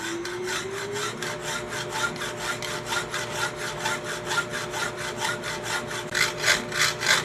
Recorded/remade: recorded